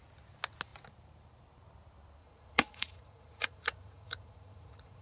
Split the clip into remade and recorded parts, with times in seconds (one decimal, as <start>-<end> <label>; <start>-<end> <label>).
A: 0.0-2.2 recorded; 2.2-5.0 remade